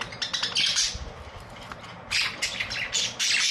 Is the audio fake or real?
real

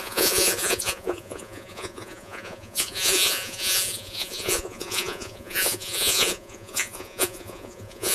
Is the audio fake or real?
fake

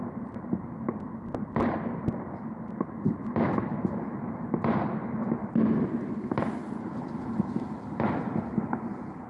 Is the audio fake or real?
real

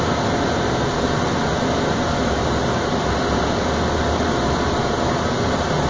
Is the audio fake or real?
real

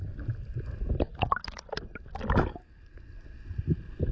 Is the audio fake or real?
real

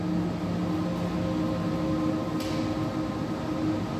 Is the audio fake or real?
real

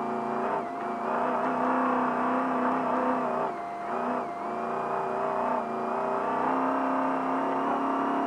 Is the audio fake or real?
real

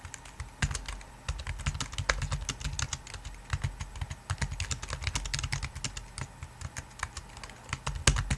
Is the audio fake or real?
real